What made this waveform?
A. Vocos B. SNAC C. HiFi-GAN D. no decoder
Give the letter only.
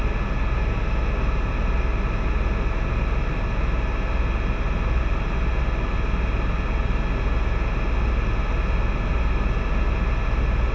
D